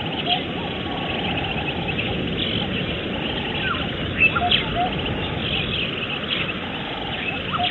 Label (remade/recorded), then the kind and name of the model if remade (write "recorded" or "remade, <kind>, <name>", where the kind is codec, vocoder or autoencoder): recorded